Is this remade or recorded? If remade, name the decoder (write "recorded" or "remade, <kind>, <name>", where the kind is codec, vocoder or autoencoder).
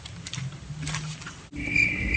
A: recorded